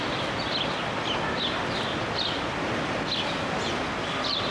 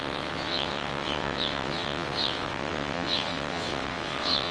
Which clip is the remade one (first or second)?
second